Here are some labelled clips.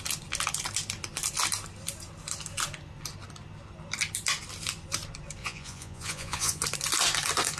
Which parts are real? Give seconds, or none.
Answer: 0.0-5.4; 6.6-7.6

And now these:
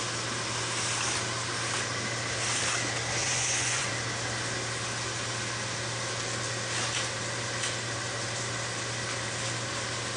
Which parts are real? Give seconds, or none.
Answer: 0.0-3.2; 3.9-10.2

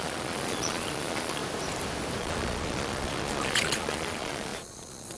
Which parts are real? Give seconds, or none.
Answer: 1.4-2.2

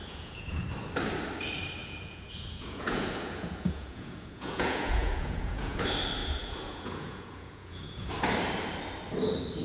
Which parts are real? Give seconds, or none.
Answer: 0.6-1.8; 5.8-6.2; 8.1-9.6

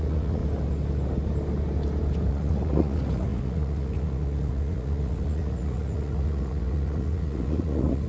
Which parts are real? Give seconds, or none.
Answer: 0.4-2.3